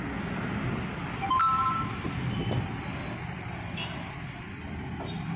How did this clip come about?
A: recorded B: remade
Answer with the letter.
A